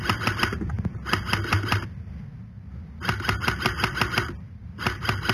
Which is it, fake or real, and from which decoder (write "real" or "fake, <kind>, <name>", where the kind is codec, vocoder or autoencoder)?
real